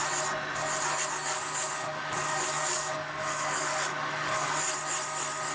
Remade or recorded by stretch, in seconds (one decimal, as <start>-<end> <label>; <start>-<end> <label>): 0.0-1.3 recorded; 1.3-4.6 remade; 4.6-5.5 recorded